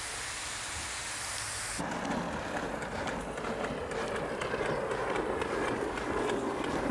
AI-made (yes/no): no